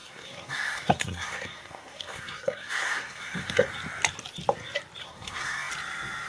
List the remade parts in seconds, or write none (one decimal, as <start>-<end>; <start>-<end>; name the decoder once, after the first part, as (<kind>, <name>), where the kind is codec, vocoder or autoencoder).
0.0-3.7 (codec, SNAC); 5.0-5.7